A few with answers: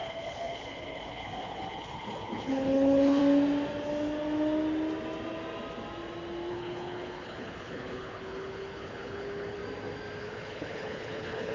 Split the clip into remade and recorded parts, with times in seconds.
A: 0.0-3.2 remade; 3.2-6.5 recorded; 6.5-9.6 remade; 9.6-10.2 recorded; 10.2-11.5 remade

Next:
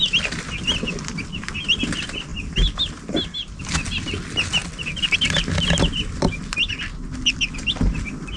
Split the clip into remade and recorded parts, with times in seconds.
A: 0.0-8.4 recorded

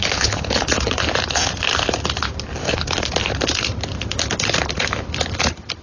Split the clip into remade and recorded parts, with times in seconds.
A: 0.0-1.0 remade; 1.0-2.6 recorded; 2.6-3.1 remade; 3.1-5.8 recorded